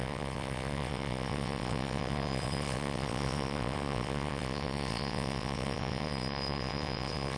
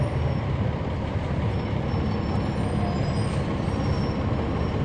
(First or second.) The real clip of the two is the second